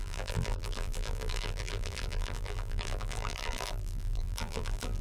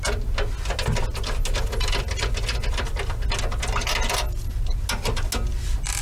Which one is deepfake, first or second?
first